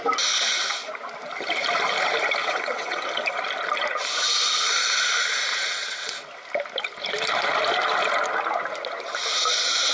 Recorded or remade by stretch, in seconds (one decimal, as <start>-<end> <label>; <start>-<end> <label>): 0.0-2.4 recorded; 2.4-3.0 remade; 3.0-5.5 recorded; 5.5-6.1 remade; 6.1-9.9 recorded